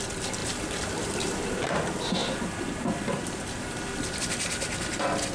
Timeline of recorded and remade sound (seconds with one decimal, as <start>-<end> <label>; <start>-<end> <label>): 0.0-0.4 recorded; 0.4-1.7 remade; 1.7-5.3 recorded